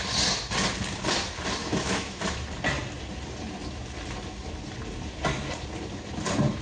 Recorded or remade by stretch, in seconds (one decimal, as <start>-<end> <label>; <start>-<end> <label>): 0.0-1.6 recorded; 1.6-2.2 remade; 2.2-6.6 recorded